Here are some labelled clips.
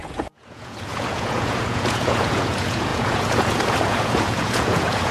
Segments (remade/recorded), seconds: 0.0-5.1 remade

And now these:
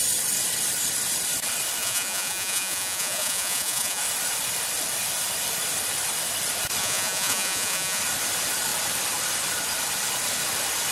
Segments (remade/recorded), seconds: 0.0-1.8 recorded; 1.8-4.0 remade; 4.0-6.8 recorded; 6.8-8.0 remade; 8.0-10.9 recorded

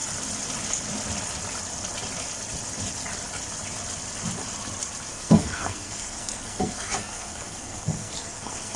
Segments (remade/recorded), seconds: 0.0-5.1 recorded; 5.1-8.8 remade

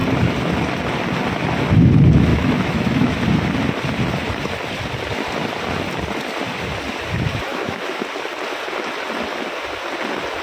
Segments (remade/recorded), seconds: 0.0-2.3 recorded; 2.3-3.2 remade; 3.2-7.5 recorded; 7.5-8.0 remade; 8.0-10.4 recorded